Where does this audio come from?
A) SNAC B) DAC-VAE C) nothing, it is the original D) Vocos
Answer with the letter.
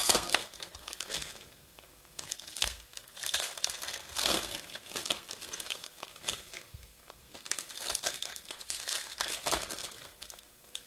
A